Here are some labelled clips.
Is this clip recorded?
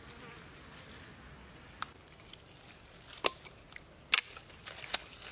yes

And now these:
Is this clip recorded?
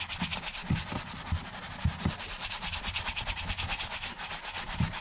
yes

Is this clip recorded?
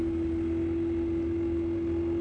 yes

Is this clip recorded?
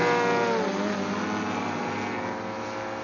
yes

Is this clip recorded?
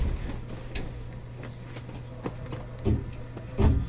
yes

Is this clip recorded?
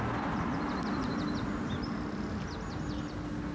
yes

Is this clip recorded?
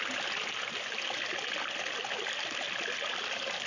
yes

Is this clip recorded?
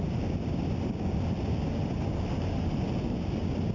yes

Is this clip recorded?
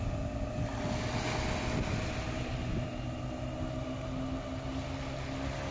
yes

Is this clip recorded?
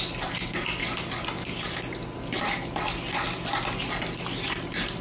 yes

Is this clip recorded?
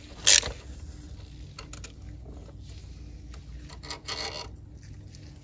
yes